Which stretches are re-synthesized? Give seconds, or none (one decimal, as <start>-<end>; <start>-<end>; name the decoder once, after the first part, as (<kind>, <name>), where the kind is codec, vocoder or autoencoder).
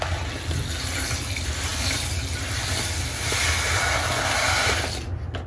none